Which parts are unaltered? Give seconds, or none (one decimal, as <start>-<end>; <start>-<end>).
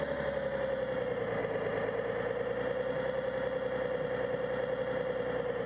0.0-5.7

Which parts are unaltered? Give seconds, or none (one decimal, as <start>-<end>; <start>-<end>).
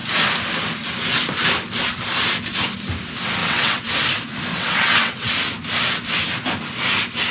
0.0-3.4; 3.9-4.5; 5.3-7.3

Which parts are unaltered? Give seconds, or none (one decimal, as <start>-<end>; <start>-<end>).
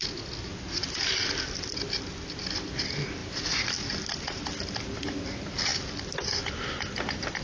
0.0-7.4